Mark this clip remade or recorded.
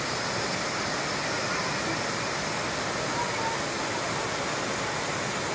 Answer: recorded